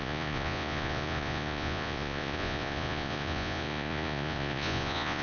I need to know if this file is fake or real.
fake